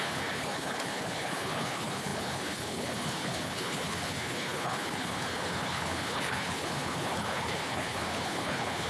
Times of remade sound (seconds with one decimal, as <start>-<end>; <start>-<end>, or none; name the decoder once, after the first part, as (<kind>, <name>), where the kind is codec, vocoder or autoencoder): 0.0-8.9 (codec, HILCodec)

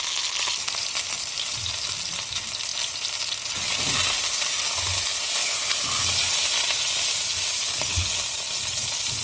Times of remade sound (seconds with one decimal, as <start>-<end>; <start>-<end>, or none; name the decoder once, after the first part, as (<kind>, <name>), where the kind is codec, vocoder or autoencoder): 7.6-8.1 (codec, HILCodec)

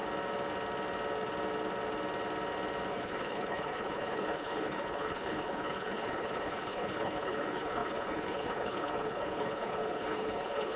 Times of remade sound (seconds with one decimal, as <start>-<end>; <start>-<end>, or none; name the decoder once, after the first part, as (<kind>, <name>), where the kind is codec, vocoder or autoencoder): 2.9-10.8 (codec, HILCodec)

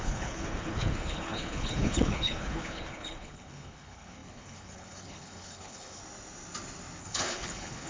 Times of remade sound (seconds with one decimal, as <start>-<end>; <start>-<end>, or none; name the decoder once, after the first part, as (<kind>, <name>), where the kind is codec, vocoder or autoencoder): 0.0-6.0 (codec, HILCodec); 7.0-7.9

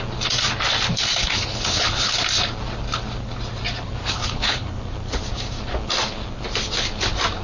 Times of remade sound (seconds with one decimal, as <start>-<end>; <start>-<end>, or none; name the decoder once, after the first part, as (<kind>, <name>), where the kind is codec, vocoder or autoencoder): 1.2-2.1 (codec, HILCodec); 4.0-4.8

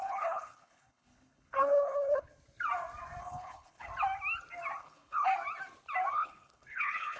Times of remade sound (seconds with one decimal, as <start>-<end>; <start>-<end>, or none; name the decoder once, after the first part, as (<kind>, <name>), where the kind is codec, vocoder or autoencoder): 0.0-2.3 (codec, HILCodec); 3.2-3.9; 4.8-5.3; 6.1-7.2

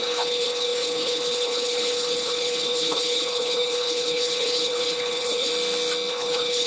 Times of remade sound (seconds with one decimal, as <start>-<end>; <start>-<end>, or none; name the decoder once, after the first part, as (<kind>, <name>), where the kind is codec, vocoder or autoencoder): 0.0-5.5 (codec, HILCodec); 6.1-6.7